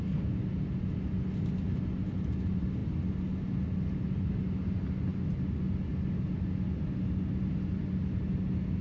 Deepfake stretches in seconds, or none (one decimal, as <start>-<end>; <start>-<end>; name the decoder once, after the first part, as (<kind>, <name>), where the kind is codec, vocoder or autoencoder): none